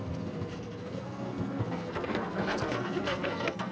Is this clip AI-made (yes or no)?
yes